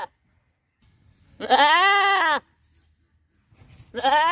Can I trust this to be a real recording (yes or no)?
yes